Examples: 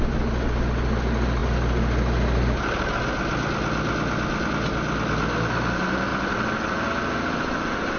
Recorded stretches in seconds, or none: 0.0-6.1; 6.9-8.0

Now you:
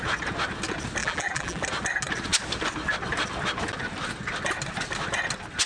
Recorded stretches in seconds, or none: 0.0-1.0; 1.6-5.7

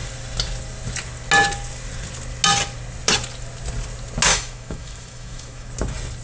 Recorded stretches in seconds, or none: 0.0-4.3; 5.7-6.2